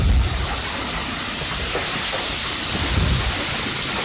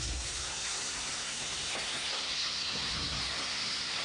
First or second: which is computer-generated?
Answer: second